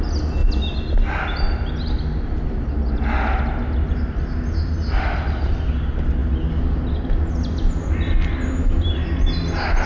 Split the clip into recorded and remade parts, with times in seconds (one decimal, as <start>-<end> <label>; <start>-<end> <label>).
0.0-9.9 recorded